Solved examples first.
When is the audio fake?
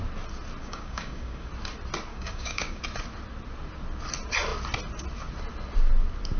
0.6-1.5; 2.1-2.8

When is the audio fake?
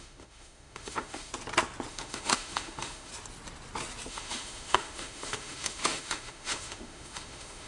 0.0-1.3; 1.9-3.1; 4.1-7.7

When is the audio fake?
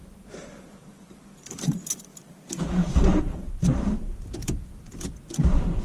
0.0-5.8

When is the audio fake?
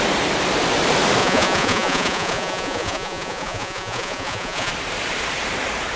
1.2-4.7